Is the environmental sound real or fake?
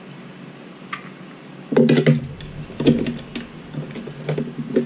real